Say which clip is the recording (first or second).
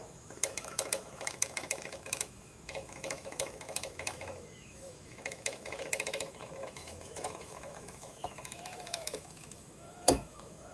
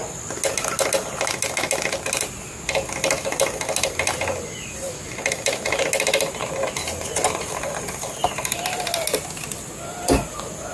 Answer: second